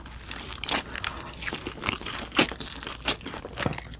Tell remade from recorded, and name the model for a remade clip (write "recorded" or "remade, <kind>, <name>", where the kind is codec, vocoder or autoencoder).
recorded